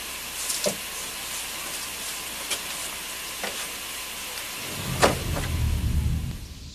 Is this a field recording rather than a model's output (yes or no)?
yes